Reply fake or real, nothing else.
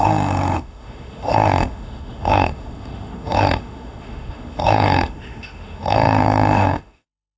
fake